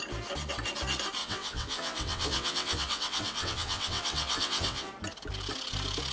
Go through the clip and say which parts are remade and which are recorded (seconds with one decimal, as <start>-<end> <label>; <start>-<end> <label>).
0.0-1.2 recorded; 1.2-4.9 remade; 4.9-6.1 recorded